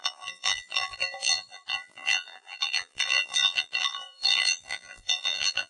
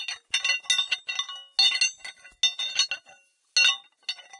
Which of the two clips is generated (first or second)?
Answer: first